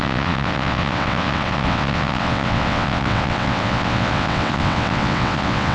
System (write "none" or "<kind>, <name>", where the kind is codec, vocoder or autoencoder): vocoder, WaveNeXt